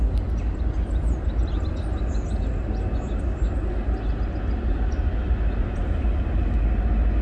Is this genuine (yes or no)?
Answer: yes